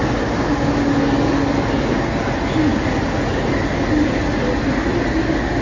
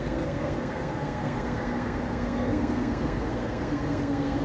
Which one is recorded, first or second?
first